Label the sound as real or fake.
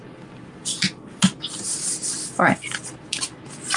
real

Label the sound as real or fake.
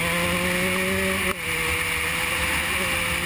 real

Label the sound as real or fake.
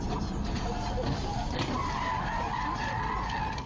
real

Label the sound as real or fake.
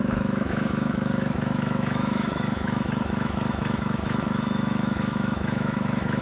fake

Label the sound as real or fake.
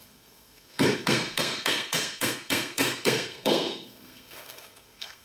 fake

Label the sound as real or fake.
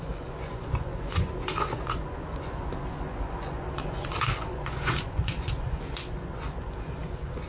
fake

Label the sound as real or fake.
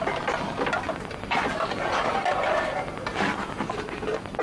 real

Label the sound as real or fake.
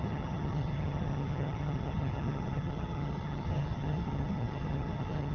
fake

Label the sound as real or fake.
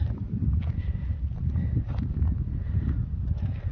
real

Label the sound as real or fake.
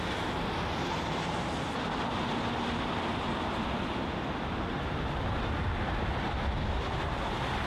real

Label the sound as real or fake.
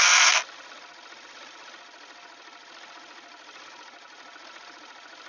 real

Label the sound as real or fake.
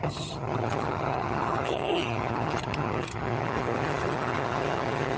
fake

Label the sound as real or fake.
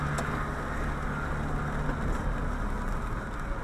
real